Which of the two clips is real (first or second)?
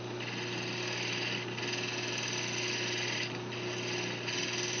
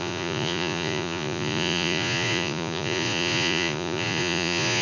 first